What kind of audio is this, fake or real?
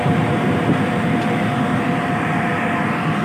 fake